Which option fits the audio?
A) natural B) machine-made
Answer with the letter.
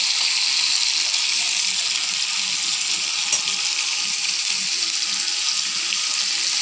A